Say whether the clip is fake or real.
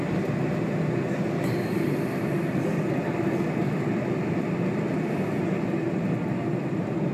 real